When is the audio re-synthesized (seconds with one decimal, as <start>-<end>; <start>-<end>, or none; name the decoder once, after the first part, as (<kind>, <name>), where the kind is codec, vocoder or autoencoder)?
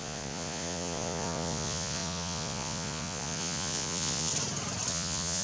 0.0-4.3 (vocoder, Vocos); 4.9-5.4